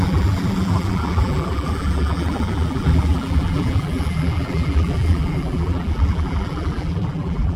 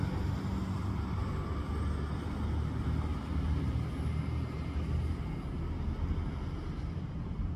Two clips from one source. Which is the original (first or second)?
second